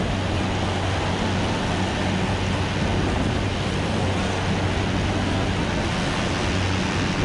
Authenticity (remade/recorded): recorded